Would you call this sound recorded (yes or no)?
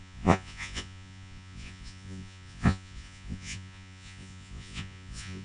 no